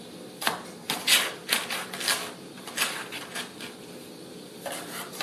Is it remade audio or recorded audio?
remade